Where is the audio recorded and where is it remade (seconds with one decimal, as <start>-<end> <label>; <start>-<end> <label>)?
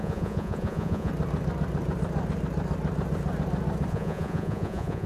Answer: 0.0-1.1 remade; 1.1-3.9 recorded; 3.9-5.1 remade